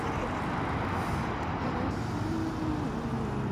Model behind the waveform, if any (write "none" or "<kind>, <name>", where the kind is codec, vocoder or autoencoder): none